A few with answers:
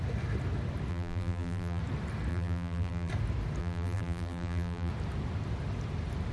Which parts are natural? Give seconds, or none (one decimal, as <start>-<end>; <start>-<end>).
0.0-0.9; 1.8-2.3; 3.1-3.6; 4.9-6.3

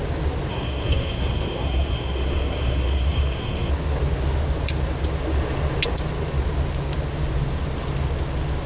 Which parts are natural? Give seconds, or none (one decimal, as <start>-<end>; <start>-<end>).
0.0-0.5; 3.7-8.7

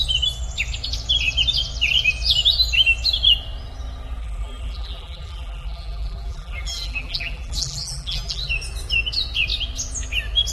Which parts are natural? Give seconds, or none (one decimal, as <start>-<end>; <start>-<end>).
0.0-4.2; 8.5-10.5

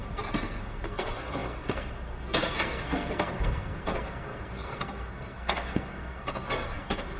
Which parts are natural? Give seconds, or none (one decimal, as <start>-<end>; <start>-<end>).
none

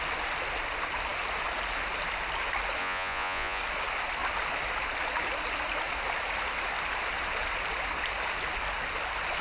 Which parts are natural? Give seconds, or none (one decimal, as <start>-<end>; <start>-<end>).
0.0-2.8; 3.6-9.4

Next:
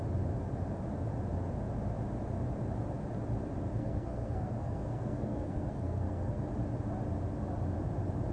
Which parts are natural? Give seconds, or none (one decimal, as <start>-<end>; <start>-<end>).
0.0-3.7; 6.5-8.3

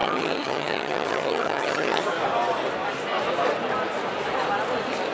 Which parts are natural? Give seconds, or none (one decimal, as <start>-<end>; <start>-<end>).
2.0-5.1